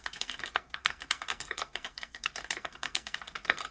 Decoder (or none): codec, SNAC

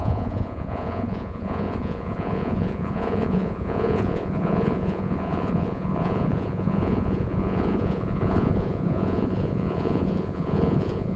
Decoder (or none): vocoder, Vocos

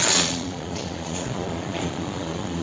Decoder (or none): vocoder, Vocos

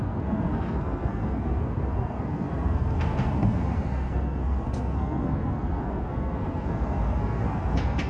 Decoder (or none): codec, SNAC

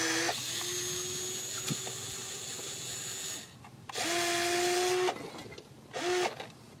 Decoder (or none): none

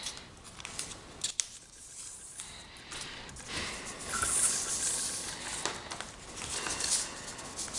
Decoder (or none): none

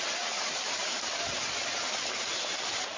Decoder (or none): none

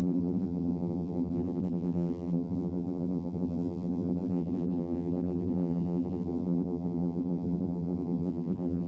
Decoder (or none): vocoder, BigVGAN v2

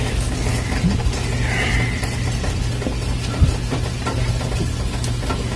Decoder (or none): none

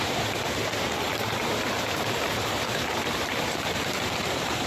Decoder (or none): vocoder, BigVGAN v2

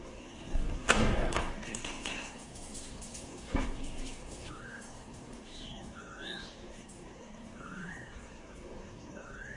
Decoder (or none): codec, SNAC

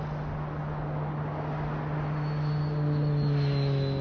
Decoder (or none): none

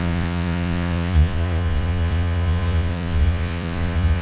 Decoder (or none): vocoder, Vocos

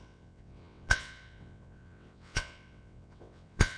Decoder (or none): vocoder, WaveNeXt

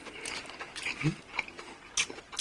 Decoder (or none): none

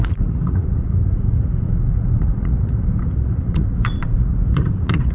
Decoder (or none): vocoder, Vocos